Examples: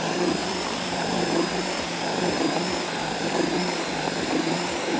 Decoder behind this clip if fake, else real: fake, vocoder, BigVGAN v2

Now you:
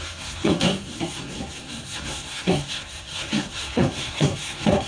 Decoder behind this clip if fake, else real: fake, codec, SNAC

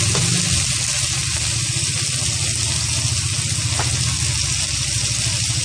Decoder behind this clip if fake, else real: real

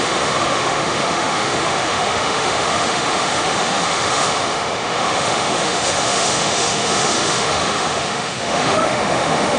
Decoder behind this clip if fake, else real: fake, autoencoder, DAC-VAE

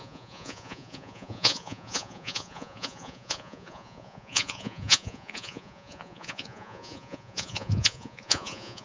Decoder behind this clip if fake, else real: fake, vocoder, Vocos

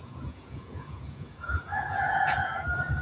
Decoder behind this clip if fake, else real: fake, vocoder, Vocos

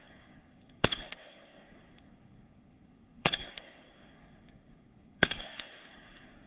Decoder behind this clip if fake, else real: fake, codec, SNAC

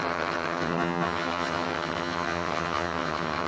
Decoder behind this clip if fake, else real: fake, vocoder, HiFi-GAN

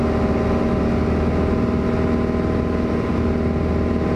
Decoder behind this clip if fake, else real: real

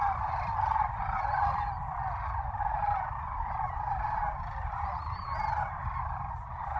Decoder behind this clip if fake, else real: real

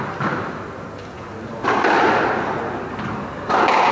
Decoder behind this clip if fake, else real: real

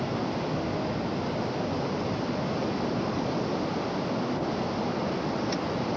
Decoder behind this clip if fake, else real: real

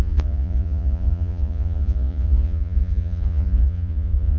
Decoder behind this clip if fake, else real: fake, vocoder, Vocos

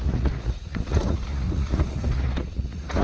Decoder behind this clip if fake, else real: fake, vocoder, Vocos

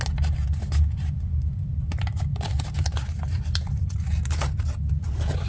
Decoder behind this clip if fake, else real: real